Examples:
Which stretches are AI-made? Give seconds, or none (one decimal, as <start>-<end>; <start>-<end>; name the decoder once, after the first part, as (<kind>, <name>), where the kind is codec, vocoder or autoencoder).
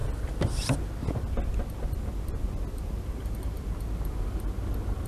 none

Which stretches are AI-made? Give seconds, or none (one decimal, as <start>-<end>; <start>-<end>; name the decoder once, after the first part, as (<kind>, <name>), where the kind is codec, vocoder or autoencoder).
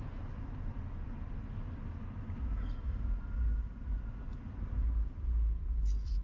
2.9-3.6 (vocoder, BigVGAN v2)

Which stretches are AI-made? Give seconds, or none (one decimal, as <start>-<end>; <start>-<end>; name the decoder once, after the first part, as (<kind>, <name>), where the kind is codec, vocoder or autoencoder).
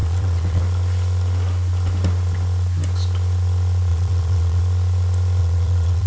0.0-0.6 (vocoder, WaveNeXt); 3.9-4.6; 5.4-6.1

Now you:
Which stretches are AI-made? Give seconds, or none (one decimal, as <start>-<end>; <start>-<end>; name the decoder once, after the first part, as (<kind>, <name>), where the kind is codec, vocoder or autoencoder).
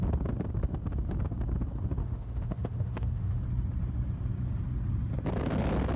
2.0-3.4 (autoencoder, DAC-VAE)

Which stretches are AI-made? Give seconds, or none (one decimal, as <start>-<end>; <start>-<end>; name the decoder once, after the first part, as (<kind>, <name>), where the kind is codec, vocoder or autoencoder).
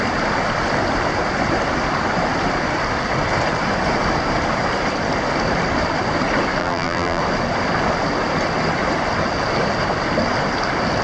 6.6-7.2 (vocoder, BigVGAN v2)